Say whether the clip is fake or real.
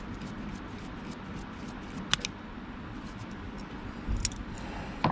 real